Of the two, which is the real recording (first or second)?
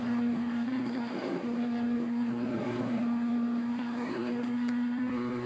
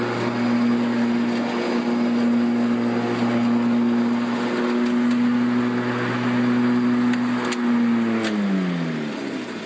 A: second